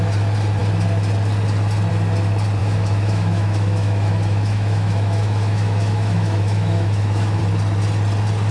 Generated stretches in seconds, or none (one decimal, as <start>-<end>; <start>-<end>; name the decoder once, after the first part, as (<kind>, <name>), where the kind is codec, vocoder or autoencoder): 2.6-7.4 (autoencoder, DAC-VAE)